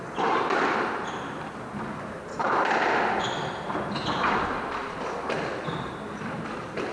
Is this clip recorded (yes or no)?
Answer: yes